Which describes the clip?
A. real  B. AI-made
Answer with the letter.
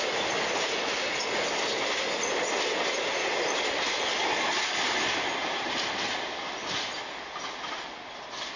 A